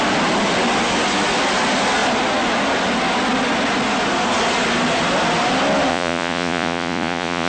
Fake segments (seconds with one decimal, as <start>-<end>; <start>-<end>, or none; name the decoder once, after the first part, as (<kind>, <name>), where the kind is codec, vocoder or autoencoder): 5.9-7.5 (vocoder, Vocos)